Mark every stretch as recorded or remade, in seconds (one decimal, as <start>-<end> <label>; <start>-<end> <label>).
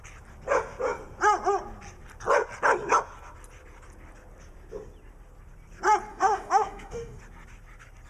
0.0-6.1 recorded; 6.1-7.2 remade; 7.2-8.1 recorded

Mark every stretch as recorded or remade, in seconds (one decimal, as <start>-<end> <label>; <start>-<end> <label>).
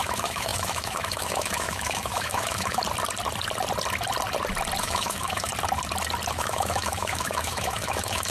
0.0-2.8 remade; 2.8-4.8 recorded; 4.8-5.5 remade; 5.5-6.3 recorded; 6.3-8.3 remade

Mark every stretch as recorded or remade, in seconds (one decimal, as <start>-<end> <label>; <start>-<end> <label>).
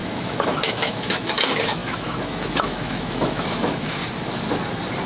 0.0-4.0 remade; 4.0-5.1 recorded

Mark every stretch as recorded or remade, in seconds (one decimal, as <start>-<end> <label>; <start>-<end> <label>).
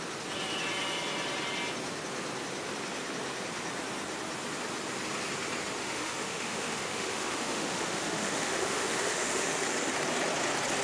0.0-5.8 recorded; 5.8-9.5 remade; 9.5-10.8 recorded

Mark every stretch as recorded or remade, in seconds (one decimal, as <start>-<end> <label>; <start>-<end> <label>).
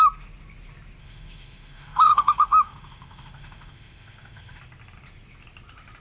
0.0-1.0 recorded; 1.0-4.6 remade; 4.6-6.0 recorded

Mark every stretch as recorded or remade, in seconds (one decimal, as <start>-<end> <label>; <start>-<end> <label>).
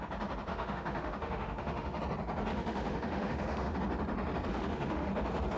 0.0-0.5 recorded; 0.5-2.0 remade; 2.0-2.5 recorded; 2.5-3.8 remade; 3.8-4.5 recorded; 4.5-5.1 remade; 5.1-5.6 recorded